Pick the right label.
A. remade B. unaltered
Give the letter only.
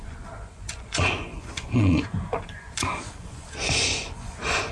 A